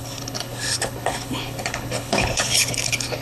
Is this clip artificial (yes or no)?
yes